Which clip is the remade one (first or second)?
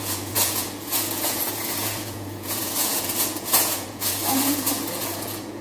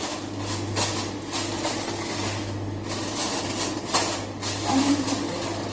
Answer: first